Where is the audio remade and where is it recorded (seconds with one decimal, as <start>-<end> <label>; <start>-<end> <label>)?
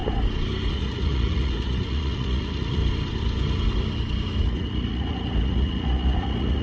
0.0-0.7 recorded; 0.7-2.8 remade; 2.8-4.4 recorded; 4.4-6.6 remade